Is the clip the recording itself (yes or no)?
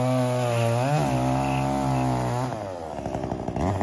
yes